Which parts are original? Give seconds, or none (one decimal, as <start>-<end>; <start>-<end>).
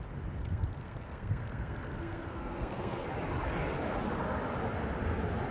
0.0-0.4; 3.1-5.5